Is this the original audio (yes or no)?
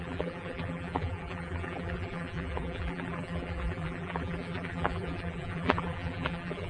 no